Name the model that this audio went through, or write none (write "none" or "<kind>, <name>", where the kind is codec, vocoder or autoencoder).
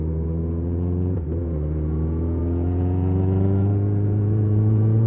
vocoder, Vocos